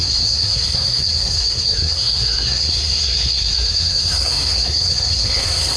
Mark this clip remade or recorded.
remade